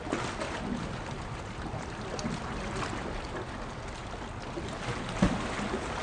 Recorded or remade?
recorded